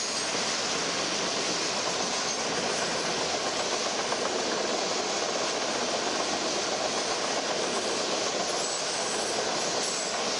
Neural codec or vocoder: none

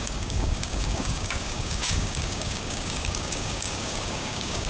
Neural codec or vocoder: codec, DAC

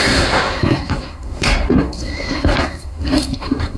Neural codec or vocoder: codec, SNAC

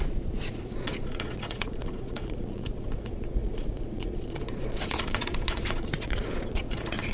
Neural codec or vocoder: vocoder, Vocos